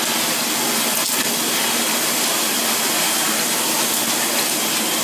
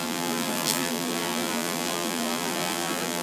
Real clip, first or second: first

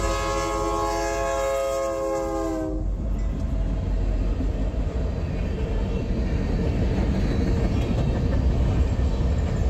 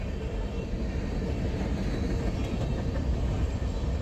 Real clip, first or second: first